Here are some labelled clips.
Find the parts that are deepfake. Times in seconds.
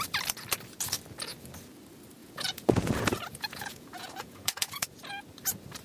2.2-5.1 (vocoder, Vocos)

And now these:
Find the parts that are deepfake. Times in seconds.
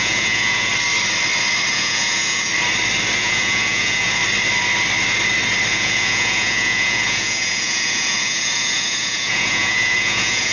0.0-0.7 (vocoder, Vocos); 1.7-2.5; 3.2-4.2; 5.7-10.5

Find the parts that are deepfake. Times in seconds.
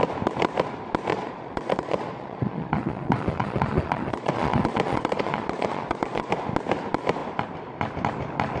1.1-6.3 (vocoder, Vocos)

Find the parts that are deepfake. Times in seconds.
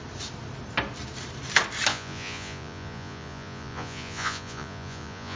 1.9-5.4 (vocoder, Vocos)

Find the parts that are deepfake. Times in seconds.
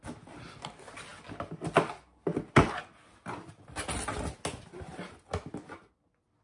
none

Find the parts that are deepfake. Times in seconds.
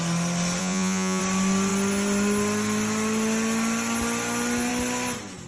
0.6-1.2 (vocoder, Vocos)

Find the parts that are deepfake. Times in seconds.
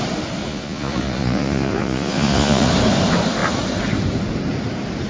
0.4-2.7 (vocoder, Vocos)